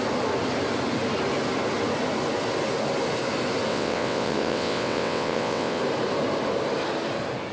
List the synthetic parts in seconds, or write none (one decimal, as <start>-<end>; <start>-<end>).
3.7-5.8